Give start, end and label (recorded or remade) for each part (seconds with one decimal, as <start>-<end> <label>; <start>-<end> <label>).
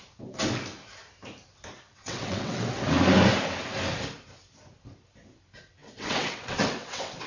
0.0-1.9 recorded; 1.9-2.7 remade; 2.7-5.8 recorded; 5.8-7.3 remade